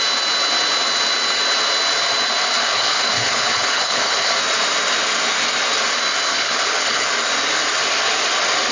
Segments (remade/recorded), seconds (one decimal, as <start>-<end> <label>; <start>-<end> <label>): 0.0-2.6 recorded; 2.6-4.3 remade; 4.3-6.3 recorded; 6.3-7.1 remade; 7.1-8.7 recorded